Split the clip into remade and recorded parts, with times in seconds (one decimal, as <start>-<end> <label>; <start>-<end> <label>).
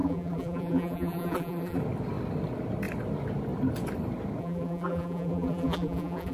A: 0.0-1.8 remade; 1.8-4.4 recorded; 4.4-6.3 remade